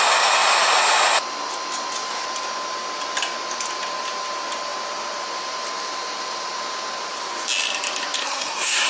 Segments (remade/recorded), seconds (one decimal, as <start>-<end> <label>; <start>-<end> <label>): 0.0-8.2 recorded; 8.2-8.9 remade